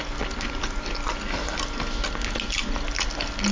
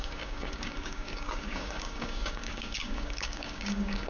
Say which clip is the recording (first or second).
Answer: first